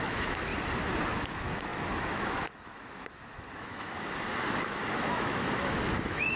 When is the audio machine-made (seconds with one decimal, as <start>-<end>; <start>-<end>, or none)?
0.0-0.5; 1.1-6.4